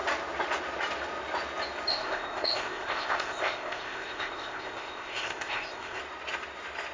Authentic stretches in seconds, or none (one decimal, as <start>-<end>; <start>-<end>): 0.0-1.9; 6.0-6.9